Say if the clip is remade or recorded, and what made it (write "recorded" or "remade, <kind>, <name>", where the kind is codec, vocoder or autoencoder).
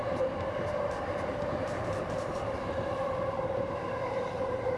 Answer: remade, vocoder, BigVGAN v2